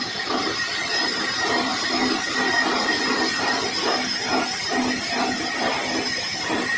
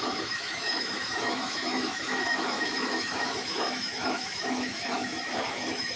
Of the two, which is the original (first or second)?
first